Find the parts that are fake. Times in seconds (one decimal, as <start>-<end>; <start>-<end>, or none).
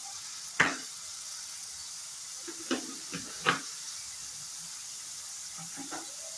0.0-1.7